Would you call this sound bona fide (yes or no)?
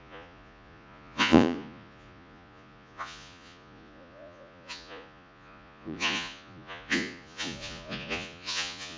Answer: no